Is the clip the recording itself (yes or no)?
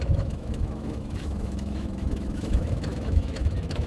no